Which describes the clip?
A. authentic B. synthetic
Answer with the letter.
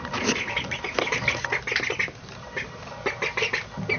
A